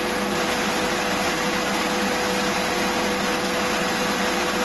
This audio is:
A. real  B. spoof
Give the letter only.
A